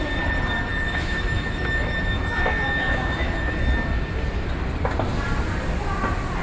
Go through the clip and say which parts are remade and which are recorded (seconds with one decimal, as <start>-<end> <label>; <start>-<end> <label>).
0.0-0.7 recorded; 0.7-3.6 remade; 3.6-6.4 recorded